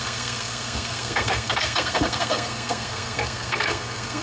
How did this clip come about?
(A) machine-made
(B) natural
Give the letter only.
A